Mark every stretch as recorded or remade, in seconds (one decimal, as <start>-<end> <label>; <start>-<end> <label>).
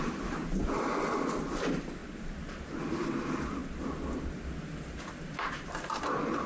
0.0-2.0 remade; 2.0-2.8 recorded; 2.8-3.6 remade; 3.6-4.6 recorded; 4.6-6.5 remade